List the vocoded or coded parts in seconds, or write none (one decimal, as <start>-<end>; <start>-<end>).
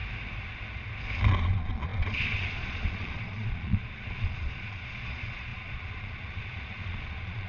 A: 1.3-7.5